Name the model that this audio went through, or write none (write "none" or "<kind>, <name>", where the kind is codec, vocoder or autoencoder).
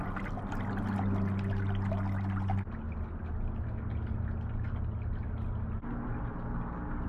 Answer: none